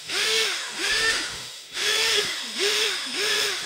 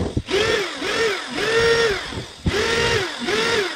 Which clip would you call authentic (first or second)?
second